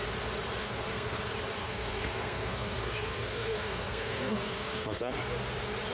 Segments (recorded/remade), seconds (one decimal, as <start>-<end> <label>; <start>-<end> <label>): 0.0-0.6 recorded; 0.6-1.2 remade; 1.2-1.6 recorded; 1.6-5.1 remade; 5.1-5.9 recorded